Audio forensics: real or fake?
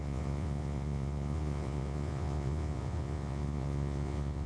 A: fake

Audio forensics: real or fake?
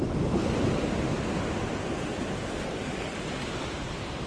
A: real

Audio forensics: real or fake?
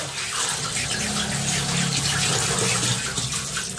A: real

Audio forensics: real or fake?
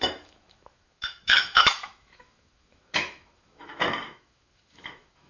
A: fake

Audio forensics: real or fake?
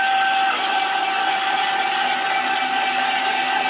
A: real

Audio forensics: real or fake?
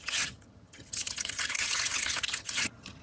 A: fake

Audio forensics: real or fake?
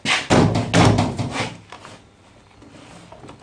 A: real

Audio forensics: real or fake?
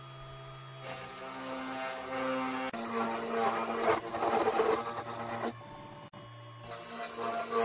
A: real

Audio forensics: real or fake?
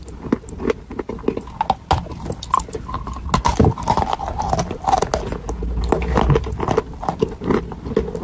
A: real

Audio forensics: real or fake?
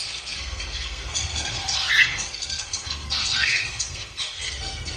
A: fake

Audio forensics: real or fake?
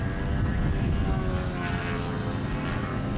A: real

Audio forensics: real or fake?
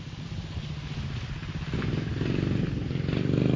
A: real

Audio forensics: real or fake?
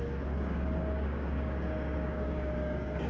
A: fake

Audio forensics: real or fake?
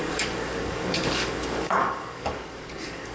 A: fake